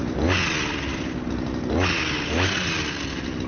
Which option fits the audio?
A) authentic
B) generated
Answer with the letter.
A